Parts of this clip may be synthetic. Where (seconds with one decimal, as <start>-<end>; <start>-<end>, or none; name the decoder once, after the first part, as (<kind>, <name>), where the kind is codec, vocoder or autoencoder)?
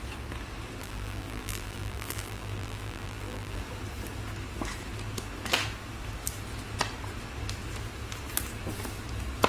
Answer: 0.8-3.6 (vocoder, BigVGAN v2)